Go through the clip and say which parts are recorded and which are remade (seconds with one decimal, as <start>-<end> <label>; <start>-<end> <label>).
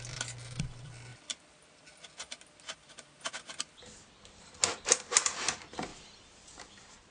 0.0-7.1 recorded